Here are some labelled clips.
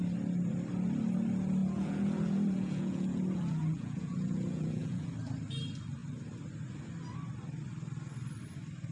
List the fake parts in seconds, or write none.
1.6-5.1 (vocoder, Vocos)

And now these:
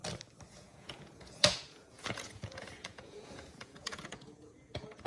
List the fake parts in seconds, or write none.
0.5-5.1 (vocoder, Vocos)

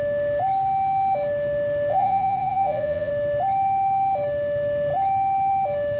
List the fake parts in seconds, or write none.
1.9-3.1 (vocoder, Vocos)

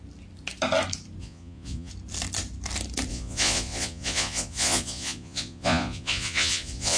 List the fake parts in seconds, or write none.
1.2-1.9 (vocoder, Vocos); 3.1-7.0

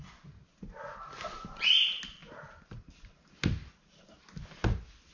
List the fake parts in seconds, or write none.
none

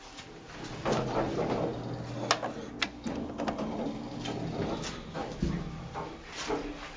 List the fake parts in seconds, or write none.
none